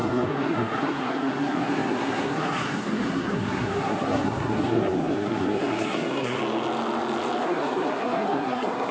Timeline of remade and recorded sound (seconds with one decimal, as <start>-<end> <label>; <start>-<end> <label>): 0.0-6.4 remade; 6.4-7.4 recorded; 7.4-8.9 remade